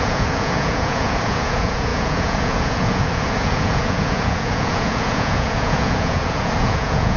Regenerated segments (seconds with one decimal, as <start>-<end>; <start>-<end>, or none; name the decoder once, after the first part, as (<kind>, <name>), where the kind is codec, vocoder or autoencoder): 0.0-7.2 (vocoder, Vocos)